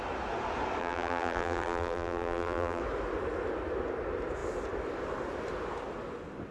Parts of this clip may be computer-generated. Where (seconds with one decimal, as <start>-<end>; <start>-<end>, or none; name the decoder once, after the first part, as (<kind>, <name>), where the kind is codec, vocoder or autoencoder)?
0.8-2.8 (vocoder, BigVGAN v2)